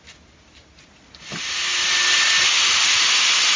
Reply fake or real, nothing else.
real